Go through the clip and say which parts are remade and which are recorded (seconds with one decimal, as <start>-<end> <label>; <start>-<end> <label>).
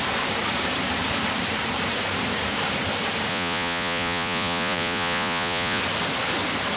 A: 0.0-3.3 recorded; 3.3-5.8 remade; 5.8-6.8 recorded